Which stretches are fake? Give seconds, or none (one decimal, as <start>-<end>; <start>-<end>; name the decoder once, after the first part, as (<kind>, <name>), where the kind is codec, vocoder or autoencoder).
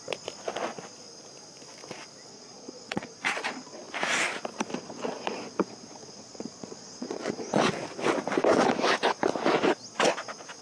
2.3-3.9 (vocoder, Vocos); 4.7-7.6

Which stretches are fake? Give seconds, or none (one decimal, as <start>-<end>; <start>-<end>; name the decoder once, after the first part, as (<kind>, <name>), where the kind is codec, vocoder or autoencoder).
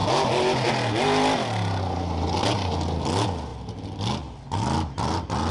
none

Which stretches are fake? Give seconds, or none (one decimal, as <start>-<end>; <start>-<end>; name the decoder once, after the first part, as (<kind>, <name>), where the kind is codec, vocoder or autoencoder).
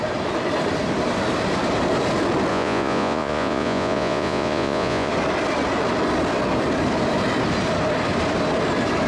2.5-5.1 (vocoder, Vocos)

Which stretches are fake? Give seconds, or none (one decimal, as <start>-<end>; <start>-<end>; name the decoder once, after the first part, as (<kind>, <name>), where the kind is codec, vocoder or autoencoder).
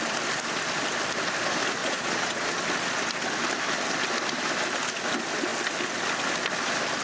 1.8-2.6 (vocoder, Vocos)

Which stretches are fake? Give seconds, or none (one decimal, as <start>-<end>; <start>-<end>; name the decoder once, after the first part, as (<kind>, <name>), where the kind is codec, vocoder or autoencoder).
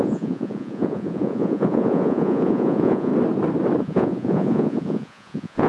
0.0-3.1 (vocoder, Vocos); 3.8-5.7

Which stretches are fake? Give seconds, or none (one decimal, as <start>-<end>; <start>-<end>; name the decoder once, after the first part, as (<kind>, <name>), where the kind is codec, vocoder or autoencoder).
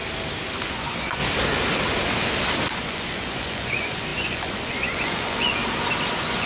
0.7-1.2 (vocoder, Vocos); 2.7-5.6; 6.1-6.5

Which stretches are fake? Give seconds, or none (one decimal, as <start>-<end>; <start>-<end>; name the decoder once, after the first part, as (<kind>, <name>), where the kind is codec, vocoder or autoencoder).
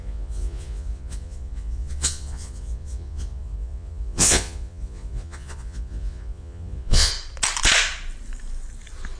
0.0-7.1 (vocoder, Vocos)